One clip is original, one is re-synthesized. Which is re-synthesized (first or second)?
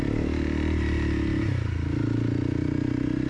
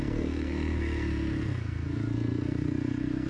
second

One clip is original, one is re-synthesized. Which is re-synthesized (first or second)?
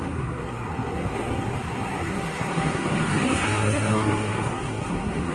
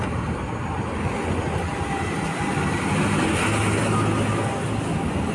first